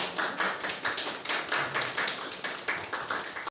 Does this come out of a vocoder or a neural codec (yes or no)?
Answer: no